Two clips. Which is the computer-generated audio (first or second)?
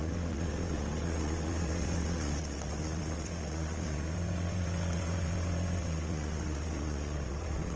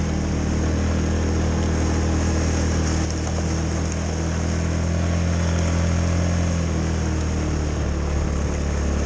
first